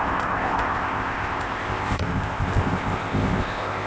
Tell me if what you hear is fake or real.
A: fake